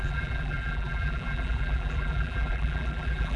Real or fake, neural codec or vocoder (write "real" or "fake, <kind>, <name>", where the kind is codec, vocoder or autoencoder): fake, vocoder, BigVGAN v2